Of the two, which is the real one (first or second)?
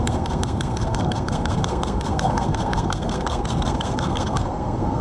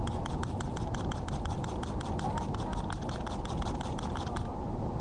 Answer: second